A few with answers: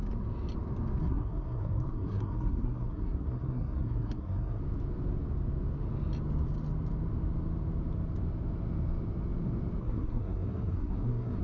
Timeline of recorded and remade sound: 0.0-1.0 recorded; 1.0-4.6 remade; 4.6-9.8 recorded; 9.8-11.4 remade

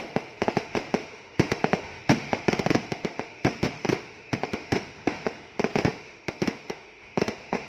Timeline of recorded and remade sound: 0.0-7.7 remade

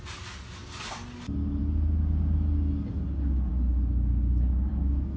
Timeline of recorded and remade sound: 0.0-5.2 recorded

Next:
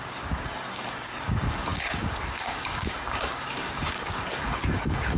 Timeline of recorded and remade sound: 0.0-5.2 remade